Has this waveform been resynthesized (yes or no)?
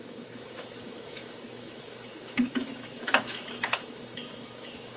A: yes